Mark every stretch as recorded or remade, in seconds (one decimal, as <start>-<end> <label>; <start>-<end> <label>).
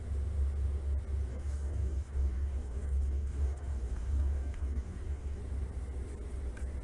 0.0-1.3 recorded; 1.3-5.4 remade; 5.4-6.8 recorded